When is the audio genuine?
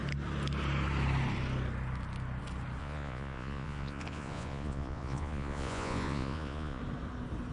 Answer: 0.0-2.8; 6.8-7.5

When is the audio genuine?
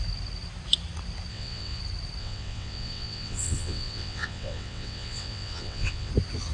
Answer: 0.0-1.3; 1.8-2.2; 6.1-6.5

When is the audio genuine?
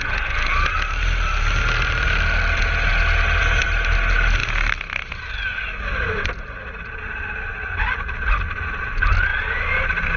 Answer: 0.0-10.2